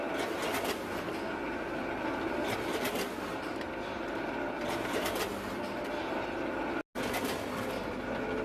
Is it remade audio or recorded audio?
recorded